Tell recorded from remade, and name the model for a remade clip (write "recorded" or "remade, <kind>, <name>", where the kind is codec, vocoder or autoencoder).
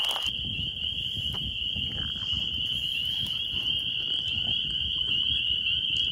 remade, vocoder, BigVGAN v2